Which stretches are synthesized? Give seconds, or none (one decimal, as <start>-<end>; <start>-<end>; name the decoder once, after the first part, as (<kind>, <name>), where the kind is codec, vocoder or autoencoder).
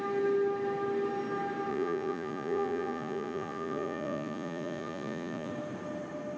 1.7-5.5 (vocoder, Vocos)